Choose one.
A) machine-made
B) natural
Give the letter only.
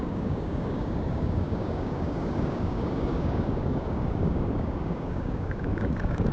A